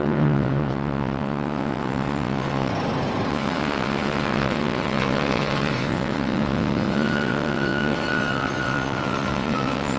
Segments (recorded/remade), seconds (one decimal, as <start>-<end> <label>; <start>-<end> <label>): 0.0-2.7 remade; 2.7-3.3 recorded; 3.3-10.0 remade